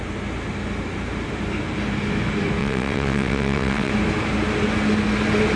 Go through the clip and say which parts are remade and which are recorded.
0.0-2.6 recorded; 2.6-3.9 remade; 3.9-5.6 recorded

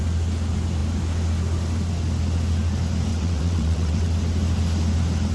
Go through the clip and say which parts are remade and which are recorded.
0.0-3.1 recorded; 3.1-4.1 remade; 4.1-5.3 recorded

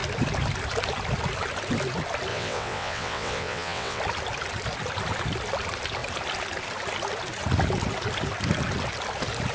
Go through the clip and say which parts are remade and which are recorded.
0.0-2.3 recorded; 2.3-4.0 remade; 4.0-9.5 recorded

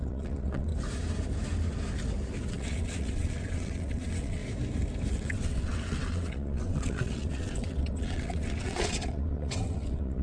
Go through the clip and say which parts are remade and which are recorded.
0.0-0.7 remade; 0.7-2.5 recorded; 2.5-4.4 remade; 4.4-5.1 recorded; 5.1-10.2 remade

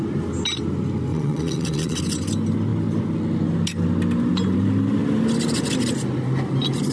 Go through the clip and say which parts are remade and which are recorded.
0.0-1.1 recorded; 1.1-2.0 remade; 2.0-6.9 recorded

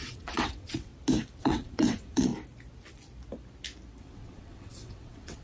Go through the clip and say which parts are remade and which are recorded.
0.0-0.9 remade; 0.9-1.4 recorded; 1.4-2.3 remade; 2.3-4.0 recorded; 4.0-5.4 remade